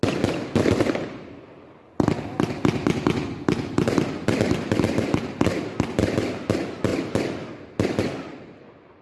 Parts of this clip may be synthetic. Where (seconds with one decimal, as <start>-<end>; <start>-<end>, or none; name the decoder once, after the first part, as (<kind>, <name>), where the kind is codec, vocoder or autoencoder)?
none